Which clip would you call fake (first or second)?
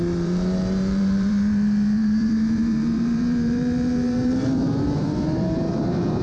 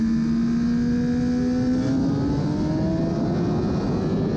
first